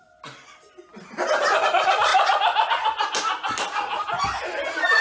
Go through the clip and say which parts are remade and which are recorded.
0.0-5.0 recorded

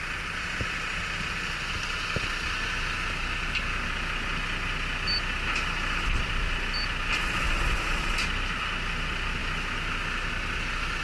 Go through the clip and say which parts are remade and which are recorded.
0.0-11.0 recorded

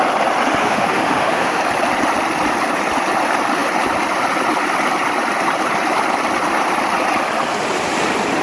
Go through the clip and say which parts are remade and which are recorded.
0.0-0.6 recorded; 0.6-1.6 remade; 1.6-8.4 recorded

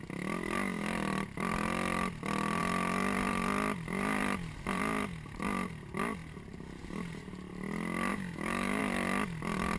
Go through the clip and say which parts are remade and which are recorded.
0.0-8.1 recorded; 8.1-8.8 remade; 8.8-9.8 recorded

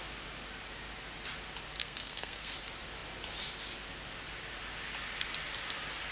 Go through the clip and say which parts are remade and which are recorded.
0.0-1.8 recorded; 1.8-2.5 remade; 2.5-6.1 recorded